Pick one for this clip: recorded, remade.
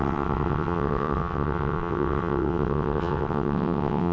remade